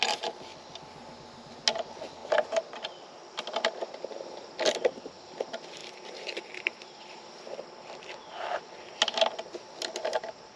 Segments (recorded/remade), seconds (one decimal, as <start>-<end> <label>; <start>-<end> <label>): 0.0-10.6 recorded